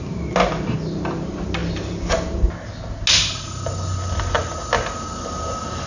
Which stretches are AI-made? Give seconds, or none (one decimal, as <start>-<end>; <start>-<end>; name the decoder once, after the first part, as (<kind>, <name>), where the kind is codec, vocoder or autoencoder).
none